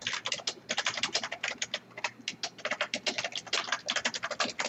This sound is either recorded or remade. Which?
recorded